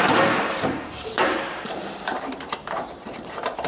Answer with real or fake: fake